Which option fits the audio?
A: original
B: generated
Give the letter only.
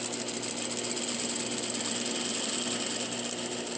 A